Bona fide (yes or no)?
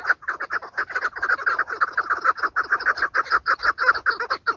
yes